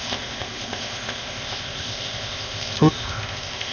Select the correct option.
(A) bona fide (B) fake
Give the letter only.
B